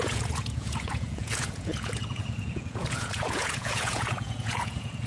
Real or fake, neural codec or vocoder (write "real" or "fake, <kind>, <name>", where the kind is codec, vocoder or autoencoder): fake, vocoder, Vocos